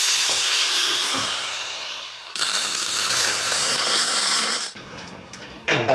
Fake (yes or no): yes